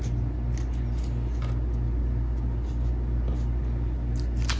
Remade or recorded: recorded